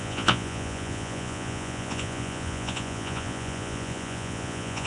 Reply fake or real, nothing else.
fake